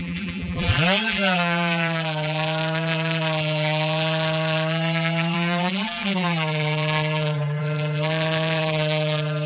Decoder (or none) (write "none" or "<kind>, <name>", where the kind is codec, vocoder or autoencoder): vocoder, BigVGAN v2